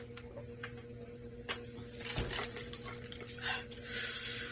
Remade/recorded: recorded